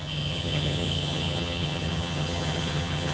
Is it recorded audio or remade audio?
remade